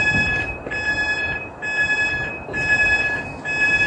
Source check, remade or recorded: recorded